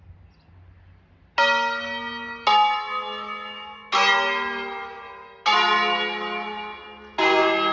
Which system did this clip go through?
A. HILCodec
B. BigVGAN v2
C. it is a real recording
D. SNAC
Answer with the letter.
C